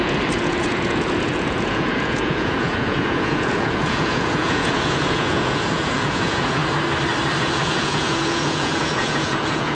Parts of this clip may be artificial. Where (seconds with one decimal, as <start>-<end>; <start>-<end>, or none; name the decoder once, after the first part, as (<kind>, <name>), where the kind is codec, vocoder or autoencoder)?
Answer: 0.0-6.6 (vocoder, Vocos); 7.4-9.7